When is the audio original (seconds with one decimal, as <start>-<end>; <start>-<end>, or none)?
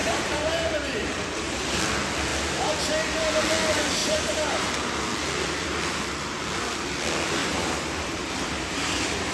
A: 1.8-4.0; 4.7-7.4